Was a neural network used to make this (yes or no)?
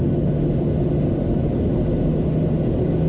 no